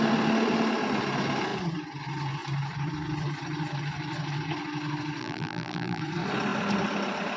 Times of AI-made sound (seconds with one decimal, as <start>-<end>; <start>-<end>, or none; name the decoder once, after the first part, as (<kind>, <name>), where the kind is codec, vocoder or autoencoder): 5.2-6.0 (vocoder, BigVGAN v2)